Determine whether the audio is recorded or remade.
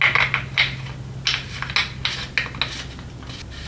recorded